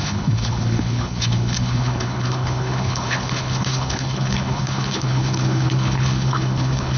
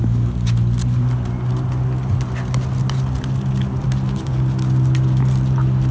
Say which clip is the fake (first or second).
first